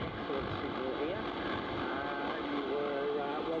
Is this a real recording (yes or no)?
yes